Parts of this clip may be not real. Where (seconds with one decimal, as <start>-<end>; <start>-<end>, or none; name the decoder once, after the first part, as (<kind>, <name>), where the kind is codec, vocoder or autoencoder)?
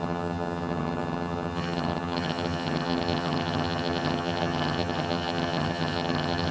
0.0-6.5 (vocoder, HiFi-GAN)